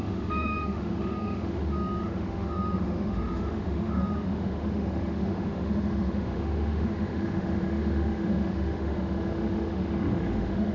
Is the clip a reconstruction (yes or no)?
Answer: yes